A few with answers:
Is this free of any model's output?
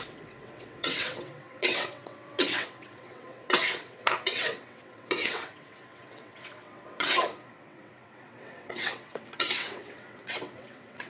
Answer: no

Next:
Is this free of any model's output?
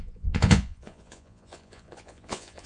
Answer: no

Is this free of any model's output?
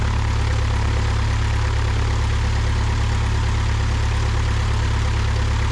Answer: yes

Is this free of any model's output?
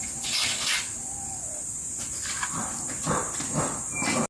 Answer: yes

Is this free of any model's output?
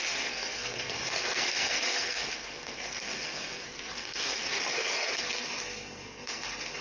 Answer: no